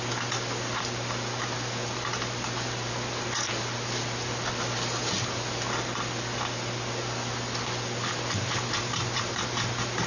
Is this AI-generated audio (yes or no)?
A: no